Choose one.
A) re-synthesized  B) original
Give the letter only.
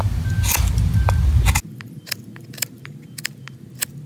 B